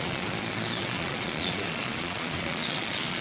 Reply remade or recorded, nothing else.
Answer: remade